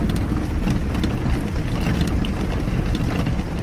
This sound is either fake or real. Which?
real